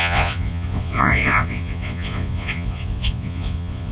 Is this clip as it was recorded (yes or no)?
no